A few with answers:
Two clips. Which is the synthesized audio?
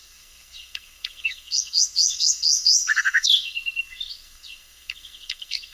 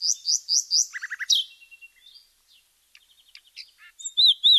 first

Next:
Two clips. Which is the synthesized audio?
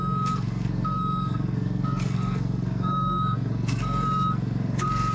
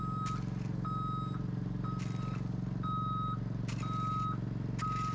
first